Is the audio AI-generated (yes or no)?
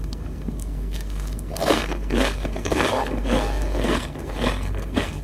yes